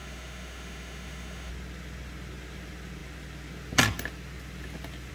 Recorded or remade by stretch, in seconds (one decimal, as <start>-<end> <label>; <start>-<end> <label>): 0.0-1.5 remade; 1.5-5.1 recorded